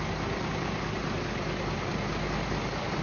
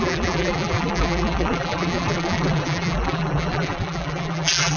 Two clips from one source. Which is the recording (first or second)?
first